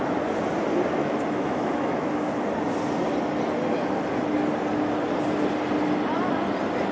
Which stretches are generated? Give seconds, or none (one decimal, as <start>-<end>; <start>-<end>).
1.0-2.5